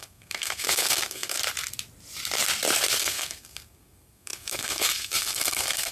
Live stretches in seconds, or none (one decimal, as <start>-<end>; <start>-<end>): 1.4-3.0